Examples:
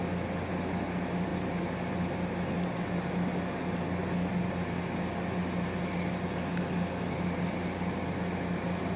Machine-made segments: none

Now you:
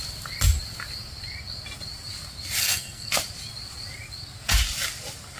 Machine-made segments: 2.6-3.1 (codec, SNAC)

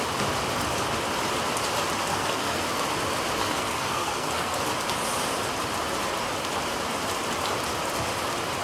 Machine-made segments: 2.1-2.9 (codec, SNAC); 3.4-4.6

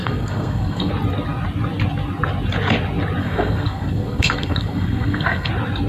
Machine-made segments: 0.0-0.9 (codec, SNAC); 3.2-5.5

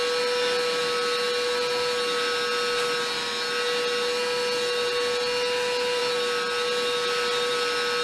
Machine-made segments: none

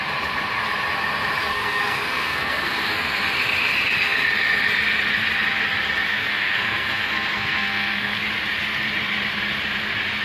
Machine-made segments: 1.4-3.2 (codec, SNAC); 6.1-8.2

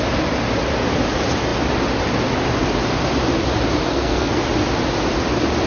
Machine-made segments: 3.9-4.4 (codec, SNAC)